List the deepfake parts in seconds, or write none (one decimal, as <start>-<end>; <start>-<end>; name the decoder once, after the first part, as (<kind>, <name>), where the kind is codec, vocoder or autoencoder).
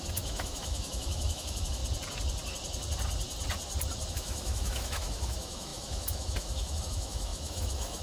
0.0-1.8 (autoencoder, DAC-VAE); 4.1-8.0